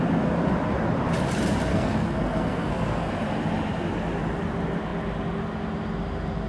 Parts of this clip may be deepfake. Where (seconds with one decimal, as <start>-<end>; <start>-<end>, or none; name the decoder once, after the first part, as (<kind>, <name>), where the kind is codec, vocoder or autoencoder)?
1.7-3.1 (codec, SNAC)